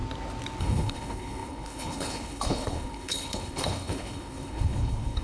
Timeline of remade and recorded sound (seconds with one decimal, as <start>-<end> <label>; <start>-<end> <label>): 0.0-0.6 recorded; 0.6-5.2 remade